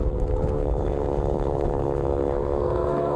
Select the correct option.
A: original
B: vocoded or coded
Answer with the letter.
B